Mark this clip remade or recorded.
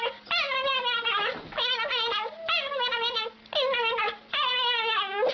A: recorded